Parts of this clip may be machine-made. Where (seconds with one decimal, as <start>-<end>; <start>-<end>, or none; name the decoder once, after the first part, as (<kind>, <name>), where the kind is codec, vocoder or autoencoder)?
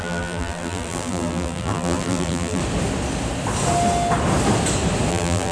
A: 0.0-2.6 (vocoder, BigVGAN v2); 5.1-5.5